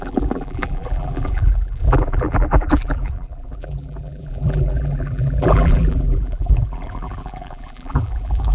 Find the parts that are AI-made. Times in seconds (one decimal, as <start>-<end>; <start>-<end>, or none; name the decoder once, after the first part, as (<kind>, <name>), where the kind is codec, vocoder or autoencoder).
0.0-8.5 (vocoder, BigVGAN v2)